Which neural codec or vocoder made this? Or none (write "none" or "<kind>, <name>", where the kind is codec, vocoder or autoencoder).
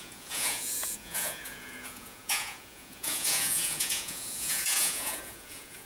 vocoder, Vocos